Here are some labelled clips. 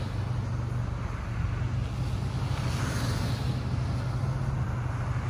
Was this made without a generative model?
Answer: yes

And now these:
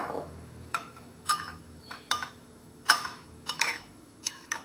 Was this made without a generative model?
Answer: no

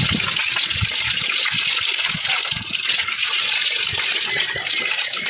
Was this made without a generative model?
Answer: yes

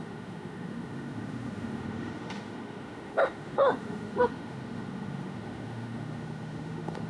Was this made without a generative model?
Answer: no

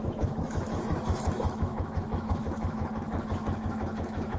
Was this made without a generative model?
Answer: no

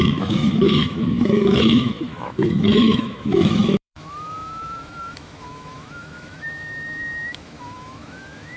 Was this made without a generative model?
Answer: no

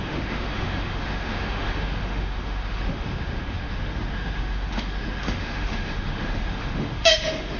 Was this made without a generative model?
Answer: no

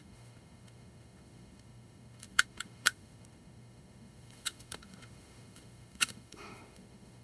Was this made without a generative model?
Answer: no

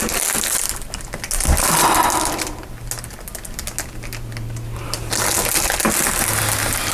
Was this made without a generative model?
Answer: yes